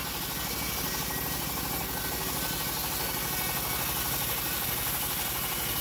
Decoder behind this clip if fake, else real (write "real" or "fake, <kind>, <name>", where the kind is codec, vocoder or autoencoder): real